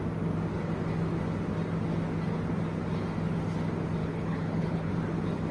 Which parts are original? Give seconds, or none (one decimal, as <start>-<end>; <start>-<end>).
0.0-4.0; 4.9-5.5